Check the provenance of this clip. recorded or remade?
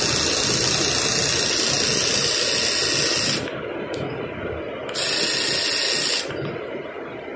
recorded